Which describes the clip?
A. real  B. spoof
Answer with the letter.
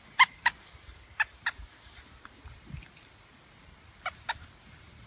A